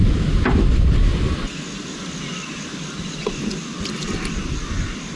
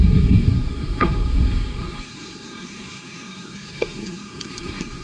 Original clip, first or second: first